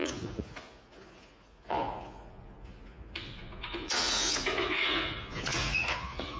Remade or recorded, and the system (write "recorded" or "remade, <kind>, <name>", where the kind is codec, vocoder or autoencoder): remade, vocoder, Vocos